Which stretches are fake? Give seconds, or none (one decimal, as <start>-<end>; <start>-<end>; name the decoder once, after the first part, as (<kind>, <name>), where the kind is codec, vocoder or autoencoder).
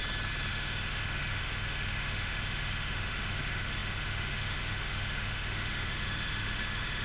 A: 0.5-7.0 (autoencoder, DAC-VAE)